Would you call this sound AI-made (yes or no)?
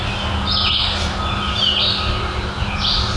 no